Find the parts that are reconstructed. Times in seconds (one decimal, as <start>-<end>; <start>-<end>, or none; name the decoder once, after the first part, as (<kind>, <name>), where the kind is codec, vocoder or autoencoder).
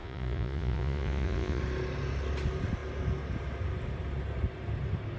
0.0-1.6 (vocoder, Vocos)